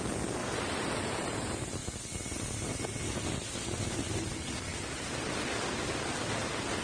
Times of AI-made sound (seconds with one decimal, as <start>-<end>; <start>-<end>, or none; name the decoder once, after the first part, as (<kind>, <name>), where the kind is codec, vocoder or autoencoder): none